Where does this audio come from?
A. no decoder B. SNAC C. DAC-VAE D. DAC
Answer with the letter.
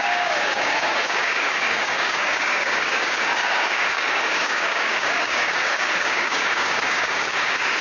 D